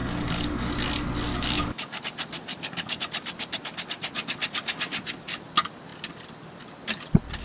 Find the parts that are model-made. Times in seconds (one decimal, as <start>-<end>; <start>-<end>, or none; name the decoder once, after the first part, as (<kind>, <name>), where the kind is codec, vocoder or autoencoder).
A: 0.0-0.7 (codec, DAC); 1.3-2.0; 2.5-3.0